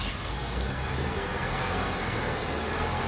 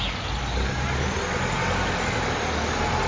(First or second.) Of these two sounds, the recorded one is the second